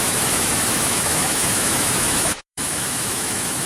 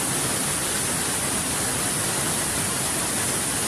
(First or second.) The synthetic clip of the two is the first